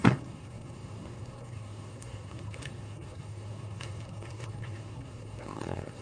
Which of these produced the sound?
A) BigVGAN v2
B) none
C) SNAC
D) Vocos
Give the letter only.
C